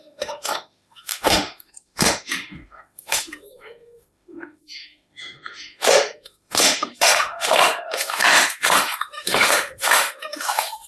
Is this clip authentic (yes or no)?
no